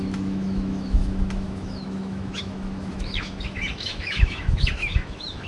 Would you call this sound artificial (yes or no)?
yes